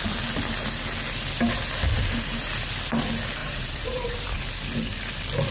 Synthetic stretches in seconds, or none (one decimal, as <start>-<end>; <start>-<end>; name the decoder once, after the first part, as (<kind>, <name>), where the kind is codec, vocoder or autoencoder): 3.4-4.3 (vocoder, BigVGAN v2)